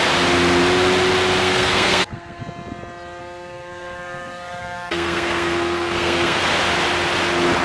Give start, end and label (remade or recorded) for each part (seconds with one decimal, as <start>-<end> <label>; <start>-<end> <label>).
0.0-1.4 recorded; 1.4-2.4 remade; 2.4-3.2 recorded; 3.2-6.4 remade; 6.4-7.6 recorded